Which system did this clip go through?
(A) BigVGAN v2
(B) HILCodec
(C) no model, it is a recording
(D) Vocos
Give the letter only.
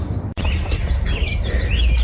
A